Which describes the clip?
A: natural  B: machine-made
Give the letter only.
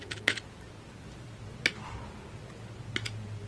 A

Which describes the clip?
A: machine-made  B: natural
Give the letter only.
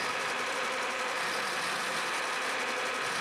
B